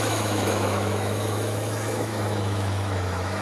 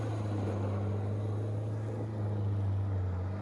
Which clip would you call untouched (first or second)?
second